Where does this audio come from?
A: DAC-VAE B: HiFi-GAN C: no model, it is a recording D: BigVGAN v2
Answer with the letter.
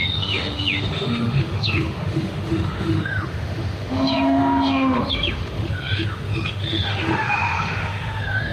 A